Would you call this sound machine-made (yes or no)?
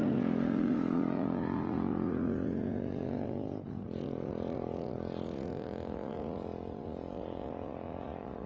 yes